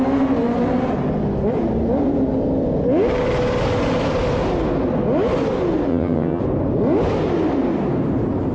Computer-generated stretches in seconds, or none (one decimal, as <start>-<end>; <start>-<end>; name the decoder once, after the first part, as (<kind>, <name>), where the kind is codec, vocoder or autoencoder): 5.9-6.4 (vocoder, HiFi-GAN)